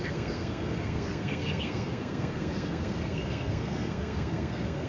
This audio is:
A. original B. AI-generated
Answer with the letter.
B